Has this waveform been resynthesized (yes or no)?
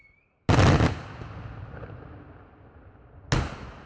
no